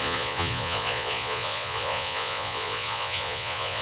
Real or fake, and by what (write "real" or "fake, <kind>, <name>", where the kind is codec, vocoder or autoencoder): fake, vocoder, Vocos